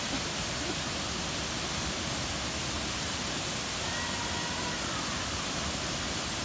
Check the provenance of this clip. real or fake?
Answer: real